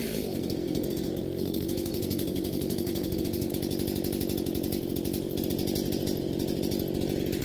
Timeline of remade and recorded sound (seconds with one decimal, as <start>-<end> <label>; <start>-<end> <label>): 0.0-3.5 remade; 3.5-7.4 recorded